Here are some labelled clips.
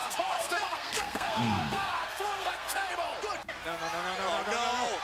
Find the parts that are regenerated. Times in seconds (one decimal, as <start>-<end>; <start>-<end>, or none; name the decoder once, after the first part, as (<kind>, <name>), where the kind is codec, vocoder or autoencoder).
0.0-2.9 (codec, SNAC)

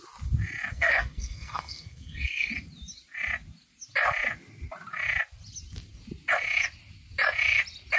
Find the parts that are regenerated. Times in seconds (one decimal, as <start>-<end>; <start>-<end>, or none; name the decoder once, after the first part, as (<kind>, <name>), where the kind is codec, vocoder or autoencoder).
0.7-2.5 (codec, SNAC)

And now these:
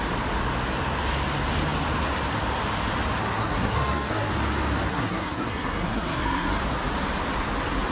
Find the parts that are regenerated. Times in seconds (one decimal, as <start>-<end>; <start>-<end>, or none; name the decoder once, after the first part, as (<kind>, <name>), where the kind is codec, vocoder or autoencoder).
3.2-4.3 (codec, SNAC); 4.9-6.6

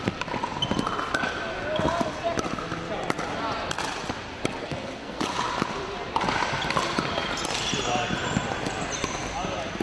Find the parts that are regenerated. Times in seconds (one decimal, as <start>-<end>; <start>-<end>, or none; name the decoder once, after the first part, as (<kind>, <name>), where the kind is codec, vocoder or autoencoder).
4.6-5.2 (codec, SNAC)

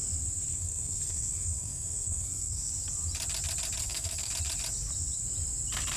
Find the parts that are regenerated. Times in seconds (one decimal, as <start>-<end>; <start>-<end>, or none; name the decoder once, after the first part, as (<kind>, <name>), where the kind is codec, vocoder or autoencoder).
0.5-2.7 (codec, SNAC); 3.8-4.3